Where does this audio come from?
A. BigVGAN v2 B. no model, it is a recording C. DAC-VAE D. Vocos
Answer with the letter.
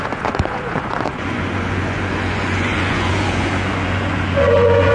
D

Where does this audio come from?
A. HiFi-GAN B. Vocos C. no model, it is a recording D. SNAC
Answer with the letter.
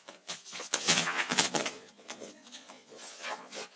B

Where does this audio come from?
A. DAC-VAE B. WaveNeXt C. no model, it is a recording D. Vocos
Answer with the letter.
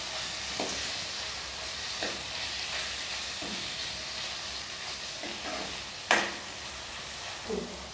C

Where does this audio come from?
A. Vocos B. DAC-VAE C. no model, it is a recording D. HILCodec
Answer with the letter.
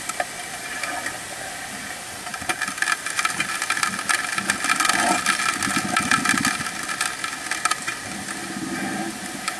C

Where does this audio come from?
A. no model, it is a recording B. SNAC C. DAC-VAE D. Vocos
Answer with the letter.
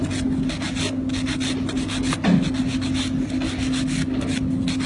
A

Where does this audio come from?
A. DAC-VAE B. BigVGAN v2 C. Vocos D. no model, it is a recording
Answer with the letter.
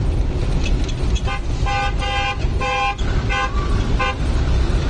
D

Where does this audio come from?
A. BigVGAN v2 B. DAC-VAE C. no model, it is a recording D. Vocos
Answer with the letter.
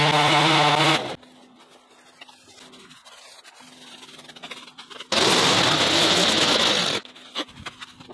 C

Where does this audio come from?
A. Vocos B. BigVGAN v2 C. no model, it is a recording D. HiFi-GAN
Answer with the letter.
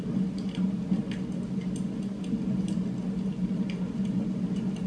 C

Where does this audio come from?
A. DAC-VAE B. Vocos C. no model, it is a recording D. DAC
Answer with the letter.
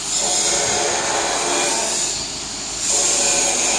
C